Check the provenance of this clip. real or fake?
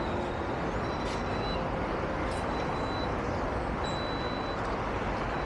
real